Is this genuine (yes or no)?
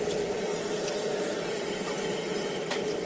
yes